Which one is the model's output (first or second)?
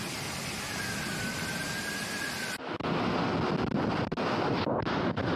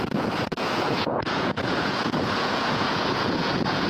second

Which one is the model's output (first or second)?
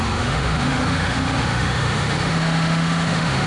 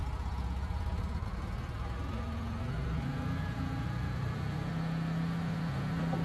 first